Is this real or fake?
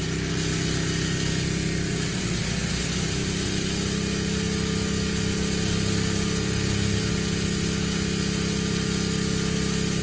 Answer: real